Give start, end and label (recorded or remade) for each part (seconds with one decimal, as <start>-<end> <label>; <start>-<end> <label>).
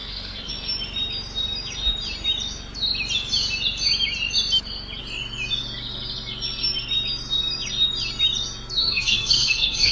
0.0-0.5 remade; 0.5-8.8 recorded; 8.8-9.9 remade